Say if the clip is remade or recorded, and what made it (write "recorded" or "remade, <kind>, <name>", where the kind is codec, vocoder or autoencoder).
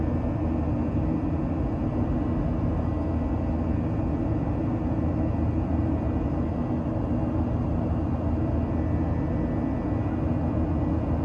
recorded